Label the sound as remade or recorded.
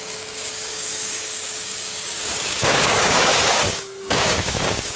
remade